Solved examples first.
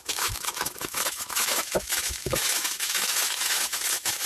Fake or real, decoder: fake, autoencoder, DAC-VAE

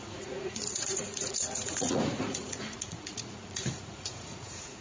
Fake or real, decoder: fake, vocoder, Vocos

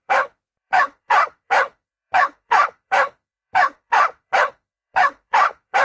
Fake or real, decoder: fake, autoencoder, DAC-VAE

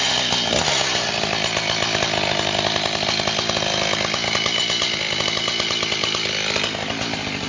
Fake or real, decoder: real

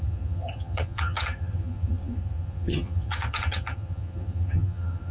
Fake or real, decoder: fake, vocoder, HiFi-GAN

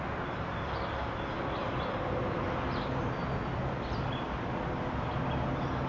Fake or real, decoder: real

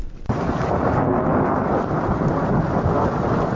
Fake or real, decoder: real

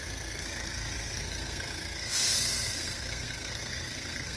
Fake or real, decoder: fake, codec, SNAC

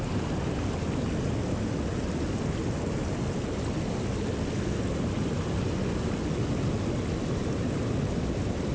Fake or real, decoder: real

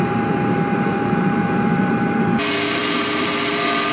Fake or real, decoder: fake, vocoder, BigVGAN v2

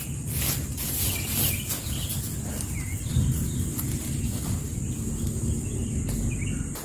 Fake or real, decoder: real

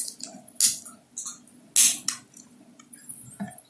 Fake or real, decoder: real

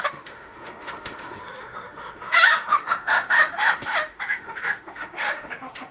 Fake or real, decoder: fake, autoencoder, DAC-VAE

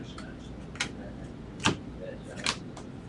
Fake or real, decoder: real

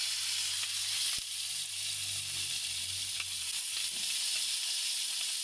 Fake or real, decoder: real